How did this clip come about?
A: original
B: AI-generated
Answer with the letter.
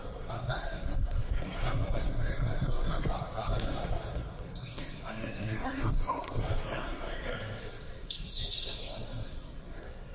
B